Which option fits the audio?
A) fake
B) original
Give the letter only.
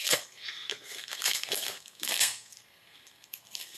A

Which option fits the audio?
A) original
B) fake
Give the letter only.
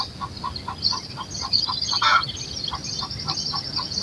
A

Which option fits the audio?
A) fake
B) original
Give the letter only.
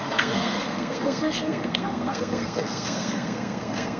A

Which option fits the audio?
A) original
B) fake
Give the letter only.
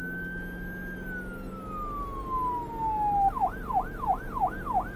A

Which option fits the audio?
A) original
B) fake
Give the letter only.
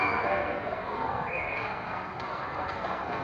B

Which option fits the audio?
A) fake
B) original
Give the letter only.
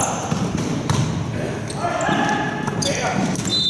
B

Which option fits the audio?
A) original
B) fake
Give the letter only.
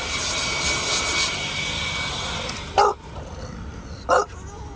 A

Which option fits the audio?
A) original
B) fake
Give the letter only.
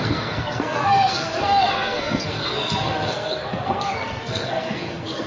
B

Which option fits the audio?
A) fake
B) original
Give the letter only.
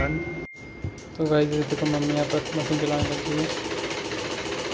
B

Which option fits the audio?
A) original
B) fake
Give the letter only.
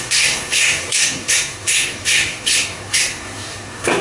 B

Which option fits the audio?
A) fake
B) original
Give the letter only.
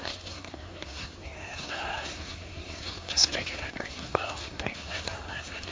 A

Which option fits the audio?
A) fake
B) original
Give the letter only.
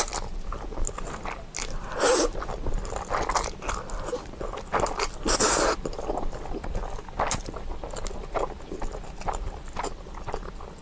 B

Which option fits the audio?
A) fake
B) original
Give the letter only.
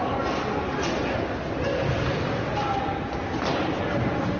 B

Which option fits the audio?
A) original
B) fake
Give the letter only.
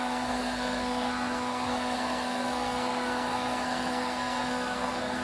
B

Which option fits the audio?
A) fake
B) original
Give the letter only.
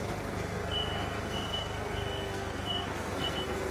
A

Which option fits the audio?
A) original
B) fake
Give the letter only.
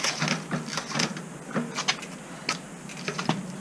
A